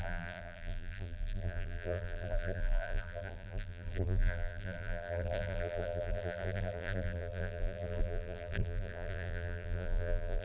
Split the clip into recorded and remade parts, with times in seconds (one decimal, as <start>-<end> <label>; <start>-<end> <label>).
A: 0.0-10.4 remade